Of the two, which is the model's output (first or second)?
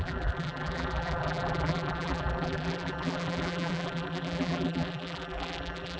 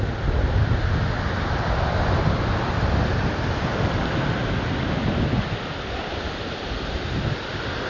first